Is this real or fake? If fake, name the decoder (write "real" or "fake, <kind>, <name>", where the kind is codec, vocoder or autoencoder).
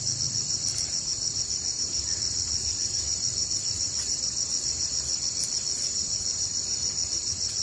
fake, vocoder, BigVGAN v2